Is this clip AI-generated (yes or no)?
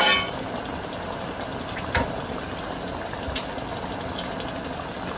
no